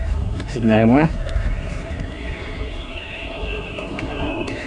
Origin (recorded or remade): remade